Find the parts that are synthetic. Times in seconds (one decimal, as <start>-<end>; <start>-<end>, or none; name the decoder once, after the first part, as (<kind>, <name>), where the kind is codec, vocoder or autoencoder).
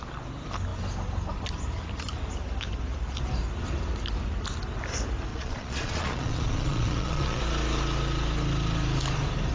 5.3-7.4 (vocoder, Vocos)